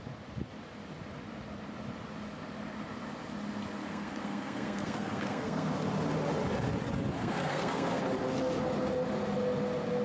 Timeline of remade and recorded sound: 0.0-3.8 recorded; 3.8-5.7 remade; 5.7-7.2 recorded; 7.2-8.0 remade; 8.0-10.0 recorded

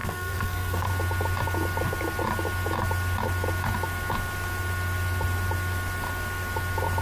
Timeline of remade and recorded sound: 0.0-0.9 remade; 0.9-7.0 recorded

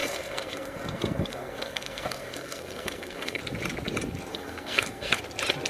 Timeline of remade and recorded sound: 0.0-3.4 remade; 3.4-4.3 recorded; 4.3-5.2 remade; 5.2-5.7 recorded

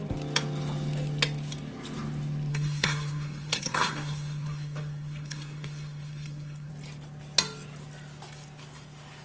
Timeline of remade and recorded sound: 0.0-2.5 recorded; 2.5-6.7 remade; 6.7-9.2 recorded

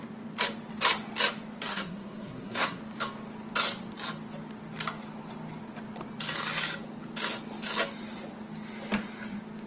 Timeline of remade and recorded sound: 0.0-1.7 recorded; 1.7-2.8 remade; 2.8-9.7 recorded

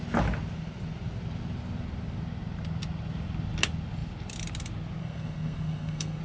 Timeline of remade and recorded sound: 0.0-5.0 recorded; 5.0-6.2 remade